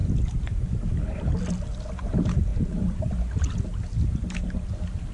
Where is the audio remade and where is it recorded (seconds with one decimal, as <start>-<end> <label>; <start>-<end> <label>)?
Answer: 0.0-2.5 recorded; 2.5-3.1 remade; 3.1-5.1 recorded